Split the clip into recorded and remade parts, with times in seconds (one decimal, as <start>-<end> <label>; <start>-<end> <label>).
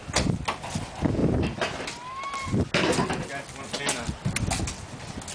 0.0-5.3 recorded